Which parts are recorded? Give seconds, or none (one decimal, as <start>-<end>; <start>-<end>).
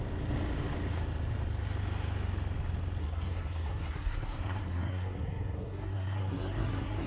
0.0-3.0